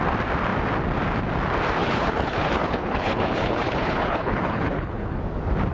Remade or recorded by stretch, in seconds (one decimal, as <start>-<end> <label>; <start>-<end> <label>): 0.0-1.8 recorded; 1.8-5.2 remade; 5.2-5.7 recorded